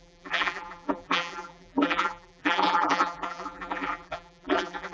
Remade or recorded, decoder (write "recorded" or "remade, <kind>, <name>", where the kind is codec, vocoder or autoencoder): remade, vocoder, BigVGAN v2